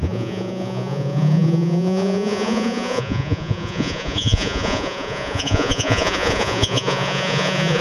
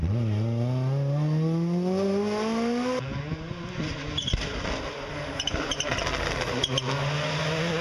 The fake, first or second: first